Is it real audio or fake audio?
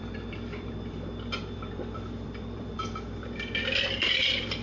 fake